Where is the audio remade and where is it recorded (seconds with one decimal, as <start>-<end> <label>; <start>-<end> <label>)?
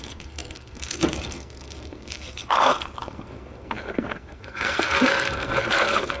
0.0-6.2 remade